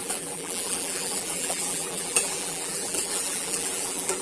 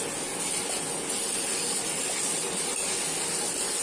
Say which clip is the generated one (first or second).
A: first